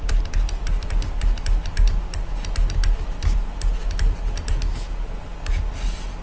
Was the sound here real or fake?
real